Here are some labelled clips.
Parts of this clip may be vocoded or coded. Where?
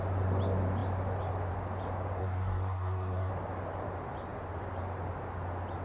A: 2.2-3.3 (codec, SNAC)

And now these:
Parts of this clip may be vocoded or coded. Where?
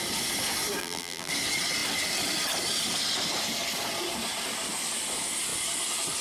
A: 0.8-1.3 (vocoder, BigVGAN v2)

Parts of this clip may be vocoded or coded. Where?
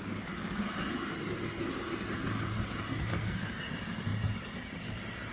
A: 3.1-3.6 (codec, SNAC)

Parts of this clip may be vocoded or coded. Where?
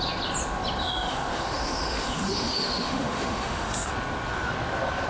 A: 0.8-3.9 (autoencoder, DAC-VAE)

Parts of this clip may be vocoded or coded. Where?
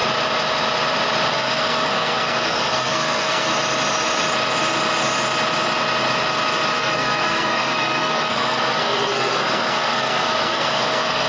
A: 1.3-3.5 (codec, SNAC); 6.8-11.3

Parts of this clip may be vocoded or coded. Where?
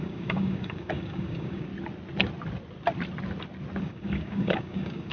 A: 0.0-1.7 (codec, DAC); 3.8-5.1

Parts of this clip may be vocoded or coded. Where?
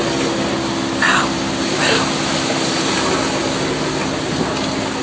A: none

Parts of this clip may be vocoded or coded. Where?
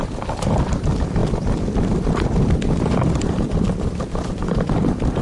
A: none